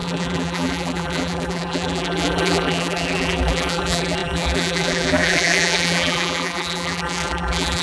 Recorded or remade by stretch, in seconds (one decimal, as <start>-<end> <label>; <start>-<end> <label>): 0.0-7.8 remade

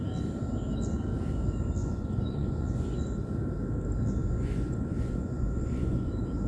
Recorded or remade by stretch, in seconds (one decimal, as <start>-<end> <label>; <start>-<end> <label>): 0.0-1.8 recorded; 1.8-3.0 remade; 3.0-4.2 recorded; 4.2-6.1 remade; 6.1-6.5 recorded

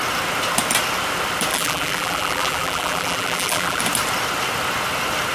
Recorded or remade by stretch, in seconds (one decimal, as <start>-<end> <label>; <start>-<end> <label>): 0.0-1.5 recorded; 1.5-3.8 remade; 3.8-5.3 recorded

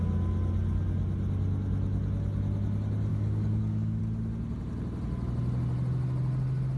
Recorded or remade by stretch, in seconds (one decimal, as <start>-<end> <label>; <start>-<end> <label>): 0.0-3.1 recorded; 3.1-4.0 remade; 4.0-6.8 recorded

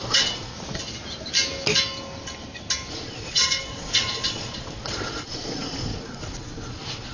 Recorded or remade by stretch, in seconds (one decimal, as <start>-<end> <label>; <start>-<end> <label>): 0.0-0.5 remade; 0.5-2.9 recorded; 2.9-7.1 remade

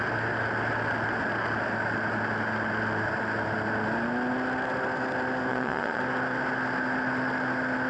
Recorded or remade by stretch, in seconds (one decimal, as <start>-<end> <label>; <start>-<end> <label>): 0.0-5.5 recorded; 5.5-6.0 remade; 6.0-7.9 recorded

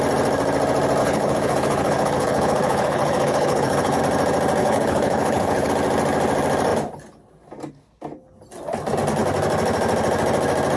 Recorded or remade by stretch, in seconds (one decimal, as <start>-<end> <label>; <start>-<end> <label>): 0.0-1.0 recorded; 1.0-4.0 remade; 4.0-4.6 recorded; 4.6-5.7 remade; 5.7-10.8 recorded